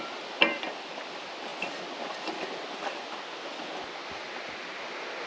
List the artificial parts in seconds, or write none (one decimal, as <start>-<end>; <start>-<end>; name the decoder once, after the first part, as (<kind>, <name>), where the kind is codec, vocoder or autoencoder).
none

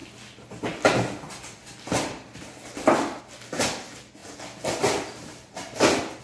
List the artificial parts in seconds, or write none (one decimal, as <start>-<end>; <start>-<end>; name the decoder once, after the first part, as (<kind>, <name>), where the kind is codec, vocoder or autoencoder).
none

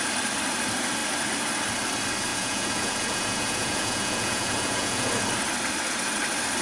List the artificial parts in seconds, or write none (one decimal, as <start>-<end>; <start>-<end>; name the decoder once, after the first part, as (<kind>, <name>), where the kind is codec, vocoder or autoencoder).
2.3-5.2 (vocoder, Vocos)

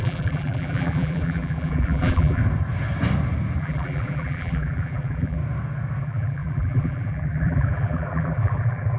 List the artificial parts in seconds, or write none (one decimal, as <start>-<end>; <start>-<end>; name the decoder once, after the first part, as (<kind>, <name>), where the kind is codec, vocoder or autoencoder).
0.0-2.4 (vocoder, BigVGAN v2); 3.6-5.4; 6.0-9.0

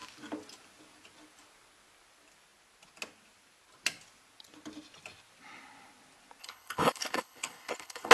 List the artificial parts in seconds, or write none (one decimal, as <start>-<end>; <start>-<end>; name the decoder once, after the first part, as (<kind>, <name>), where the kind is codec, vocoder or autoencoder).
6.4-8.1 (codec, HILCodec)

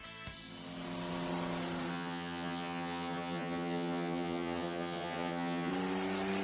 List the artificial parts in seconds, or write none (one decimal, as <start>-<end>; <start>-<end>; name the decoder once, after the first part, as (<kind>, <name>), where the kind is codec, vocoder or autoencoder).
1.9-5.7 (vocoder, HiFi-GAN)

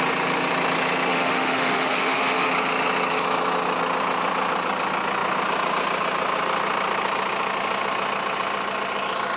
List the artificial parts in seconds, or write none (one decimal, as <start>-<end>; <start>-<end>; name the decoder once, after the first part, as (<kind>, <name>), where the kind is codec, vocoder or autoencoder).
1.1-2.5 (autoencoder, DAC-VAE)

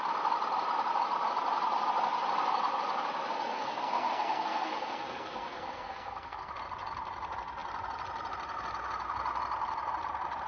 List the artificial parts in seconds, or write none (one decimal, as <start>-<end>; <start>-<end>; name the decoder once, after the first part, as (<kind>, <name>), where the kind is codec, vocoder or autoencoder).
3.5-6.5 (codec, SNAC)